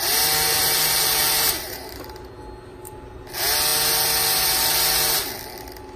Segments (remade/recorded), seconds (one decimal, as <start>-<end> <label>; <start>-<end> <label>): 0.0-0.6 recorded; 0.6-2.3 remade; 2.3-2.7 recorded; 2.7-3.2 remade; 3.2-6.0 recorded